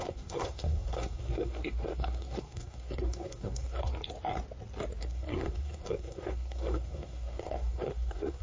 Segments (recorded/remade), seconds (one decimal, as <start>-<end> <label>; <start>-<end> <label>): 0.0-3.9 remade; 3.9-5.0 recorded; 5.0-8.4 remade